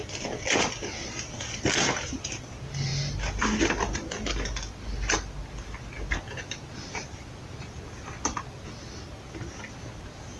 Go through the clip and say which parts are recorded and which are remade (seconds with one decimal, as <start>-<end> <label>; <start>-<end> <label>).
0.0-10.4 recorded